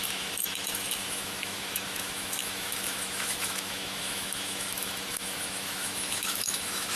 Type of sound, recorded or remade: remade